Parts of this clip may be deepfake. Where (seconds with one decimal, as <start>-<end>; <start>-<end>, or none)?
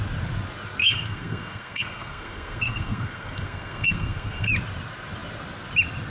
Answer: 0.8-4.5